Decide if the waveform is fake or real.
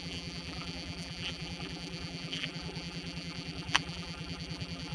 fake